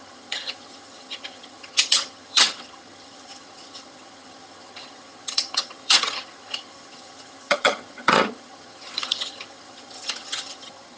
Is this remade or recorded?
remade